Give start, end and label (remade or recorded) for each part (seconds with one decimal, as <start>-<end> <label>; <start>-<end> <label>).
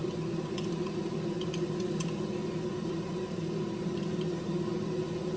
0.0-5.4 recorded